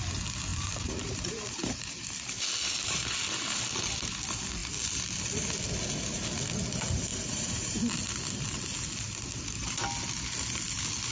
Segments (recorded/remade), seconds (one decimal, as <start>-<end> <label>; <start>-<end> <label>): 0.0-0.5 recorded; 0.5-2.1 remade; 2.1-7.1 recorded; 7.1-7.8 remade; 7.8-11.1 recorded